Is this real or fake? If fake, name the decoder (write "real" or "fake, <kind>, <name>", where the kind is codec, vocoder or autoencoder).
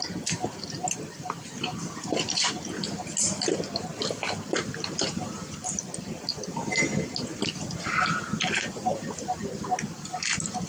real